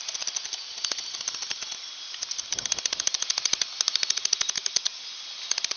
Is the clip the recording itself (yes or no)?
yes